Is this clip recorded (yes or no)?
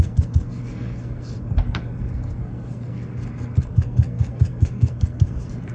no